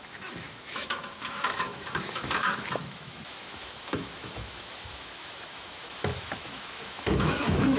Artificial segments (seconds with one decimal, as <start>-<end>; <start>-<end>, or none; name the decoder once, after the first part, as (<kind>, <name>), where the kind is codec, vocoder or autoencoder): 0.0-7.8 (autoencoder, DAC-VAE)